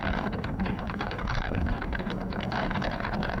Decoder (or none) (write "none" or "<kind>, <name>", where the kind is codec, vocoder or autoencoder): codec, DAC